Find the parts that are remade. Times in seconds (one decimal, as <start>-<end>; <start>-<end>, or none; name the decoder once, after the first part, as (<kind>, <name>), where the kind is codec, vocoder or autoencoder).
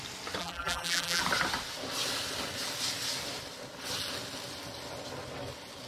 0.4-1.2 (vocoder, BigVGAN v2)